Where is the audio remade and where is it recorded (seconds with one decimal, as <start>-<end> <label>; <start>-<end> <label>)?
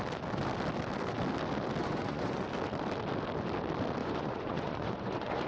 0.0-1.8 recorded; 1.8-2.4 remade; 2.4-4.0 recorded; 4.0-5.5 remade